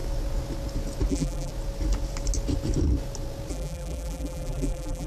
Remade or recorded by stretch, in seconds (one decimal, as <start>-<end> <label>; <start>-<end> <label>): 0.0-1.1 recorded; 1.1-1.5 remade; 1.5-3.5 recorded; 3.5-5.1 remade